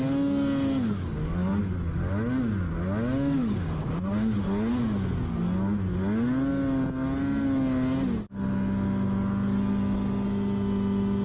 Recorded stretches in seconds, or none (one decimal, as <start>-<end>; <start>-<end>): 0.0-3.4; 4.7-11.2